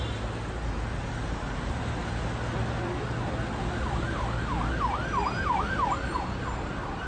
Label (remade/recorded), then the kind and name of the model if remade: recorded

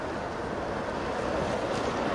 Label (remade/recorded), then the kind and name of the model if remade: recorded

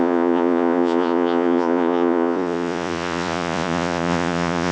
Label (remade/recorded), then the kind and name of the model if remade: remade, vocoder, Vocos